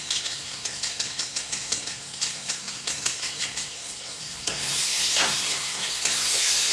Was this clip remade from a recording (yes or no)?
yes